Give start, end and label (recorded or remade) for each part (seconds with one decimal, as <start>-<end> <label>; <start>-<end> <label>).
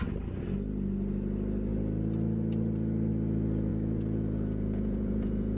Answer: 0.0-3.7 recorded; 3.7-5.6 remade